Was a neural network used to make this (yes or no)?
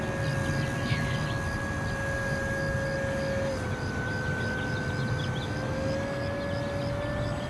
no